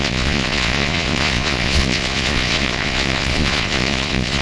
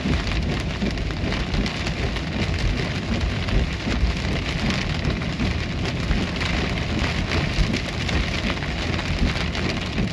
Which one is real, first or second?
second